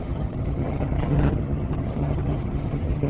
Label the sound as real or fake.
fake